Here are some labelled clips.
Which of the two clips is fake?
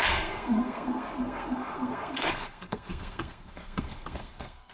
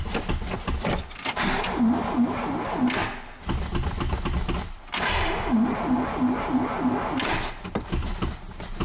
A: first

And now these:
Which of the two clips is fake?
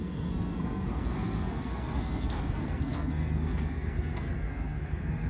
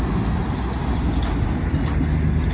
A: first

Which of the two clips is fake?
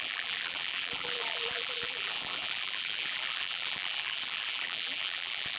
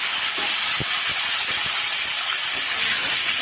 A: first